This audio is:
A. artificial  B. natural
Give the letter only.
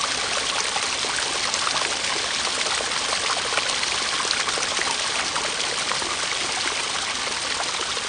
B